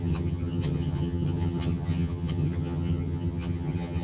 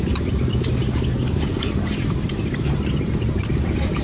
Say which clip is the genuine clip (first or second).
second